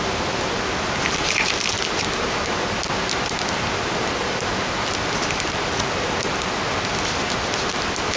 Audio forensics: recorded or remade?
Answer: recorded